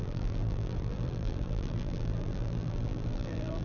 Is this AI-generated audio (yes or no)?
yes